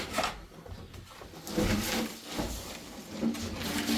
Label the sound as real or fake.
real